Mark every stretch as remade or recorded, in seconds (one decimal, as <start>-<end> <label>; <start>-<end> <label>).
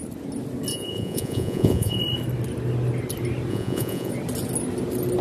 0.0-0.7 recorded; 0.7-2.0 remade; 2.0-3.5 recorded; 3.5-4.1 remade; 4.1-5.2 recorded